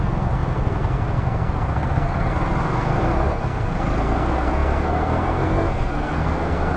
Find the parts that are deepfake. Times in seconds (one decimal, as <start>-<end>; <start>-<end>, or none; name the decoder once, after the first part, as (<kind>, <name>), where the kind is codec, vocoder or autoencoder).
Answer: 0.0-6.8 (codec, SNAC)